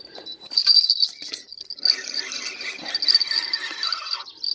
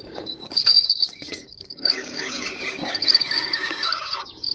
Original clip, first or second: first